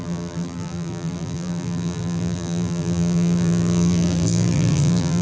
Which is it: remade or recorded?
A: remade